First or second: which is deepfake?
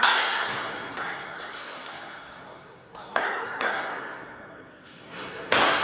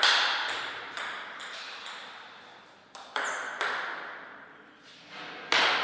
first